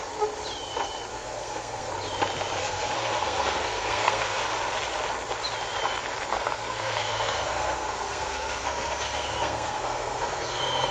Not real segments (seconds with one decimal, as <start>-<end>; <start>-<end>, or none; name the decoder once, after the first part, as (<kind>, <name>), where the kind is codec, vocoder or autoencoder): 1.1-1.9 (codec, SNAC); 2.6-4.4; 6.3-10.9